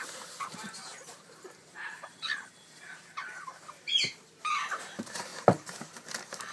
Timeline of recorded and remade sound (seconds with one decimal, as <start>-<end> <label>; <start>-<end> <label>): 0.0-5.3 remade; 5.3-6.5 recorded